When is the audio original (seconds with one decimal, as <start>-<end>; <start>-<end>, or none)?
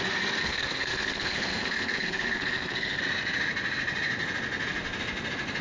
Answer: 0.0-0.4; 3.0-5.6